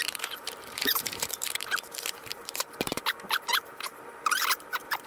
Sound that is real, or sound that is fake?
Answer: fake